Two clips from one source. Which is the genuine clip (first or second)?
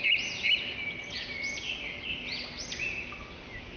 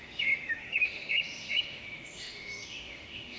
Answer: first